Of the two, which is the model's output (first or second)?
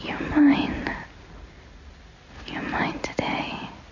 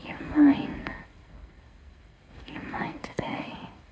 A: second